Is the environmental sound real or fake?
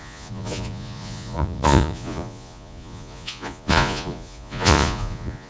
fake